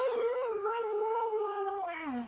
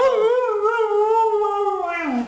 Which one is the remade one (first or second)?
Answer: first